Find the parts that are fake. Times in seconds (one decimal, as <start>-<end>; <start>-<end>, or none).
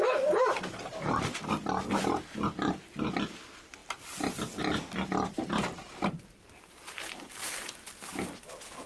5.3-7.7